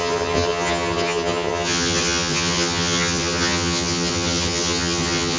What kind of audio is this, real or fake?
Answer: fake